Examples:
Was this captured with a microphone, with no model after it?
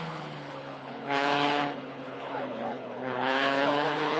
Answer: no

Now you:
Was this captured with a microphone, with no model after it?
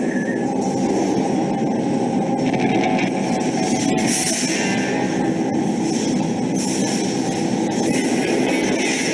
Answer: yes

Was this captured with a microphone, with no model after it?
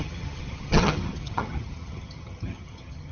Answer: no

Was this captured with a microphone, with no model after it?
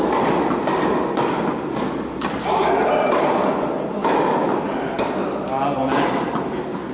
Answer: yes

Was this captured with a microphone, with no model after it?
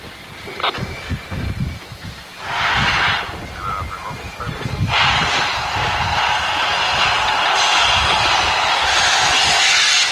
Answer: yes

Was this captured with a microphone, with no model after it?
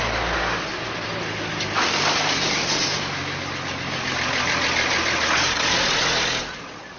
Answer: yes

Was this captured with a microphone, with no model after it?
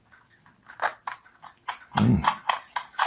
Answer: yes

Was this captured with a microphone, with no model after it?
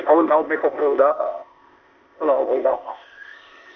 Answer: no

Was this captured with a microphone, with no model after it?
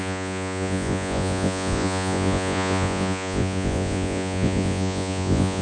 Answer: no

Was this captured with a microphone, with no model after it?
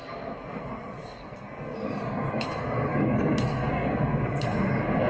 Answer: no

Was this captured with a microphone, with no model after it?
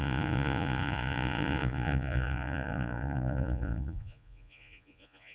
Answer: no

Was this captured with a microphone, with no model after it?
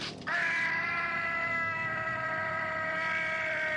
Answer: no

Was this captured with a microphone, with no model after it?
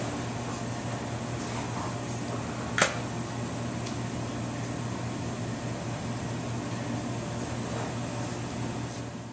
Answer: yes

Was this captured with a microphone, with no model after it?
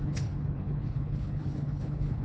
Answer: no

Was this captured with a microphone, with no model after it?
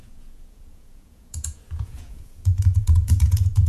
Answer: no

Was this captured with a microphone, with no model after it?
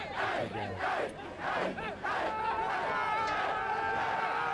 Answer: yes